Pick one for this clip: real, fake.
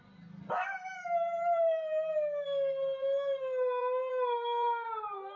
real